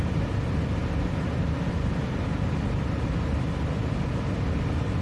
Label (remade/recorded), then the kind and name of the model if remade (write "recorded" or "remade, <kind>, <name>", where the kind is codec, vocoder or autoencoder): recorded